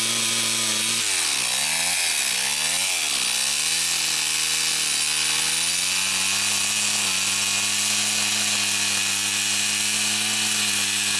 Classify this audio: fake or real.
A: real